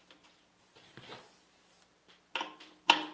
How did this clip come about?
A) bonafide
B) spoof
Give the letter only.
A